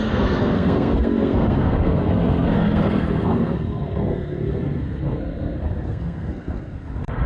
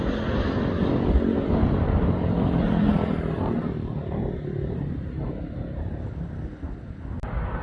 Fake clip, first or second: first